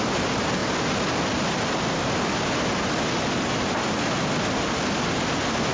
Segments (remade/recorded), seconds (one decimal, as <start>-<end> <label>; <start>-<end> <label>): 0.0-5.7 recorded